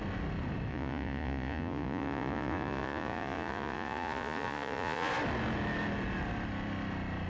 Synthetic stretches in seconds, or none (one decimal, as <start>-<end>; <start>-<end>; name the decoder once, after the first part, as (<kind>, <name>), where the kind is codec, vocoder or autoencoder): 0.7-5.1 (vocoder, Vocos)

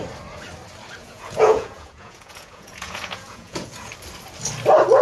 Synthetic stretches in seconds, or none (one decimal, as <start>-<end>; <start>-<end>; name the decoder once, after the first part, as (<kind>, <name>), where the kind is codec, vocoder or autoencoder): 1.0-3.9 (vocoder, Vocos)